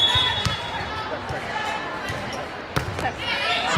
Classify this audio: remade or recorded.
recorded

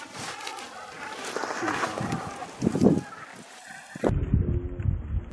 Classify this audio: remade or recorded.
recorded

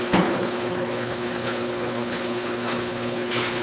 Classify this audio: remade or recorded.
remade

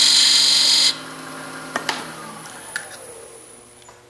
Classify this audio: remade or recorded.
recorded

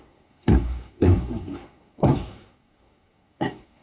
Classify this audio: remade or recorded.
remade